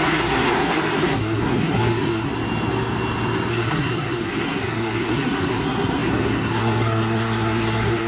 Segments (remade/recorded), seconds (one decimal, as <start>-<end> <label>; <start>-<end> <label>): 0.0-2.3 remade; 2.3-3.5 recorded; 3.5-8.1 remade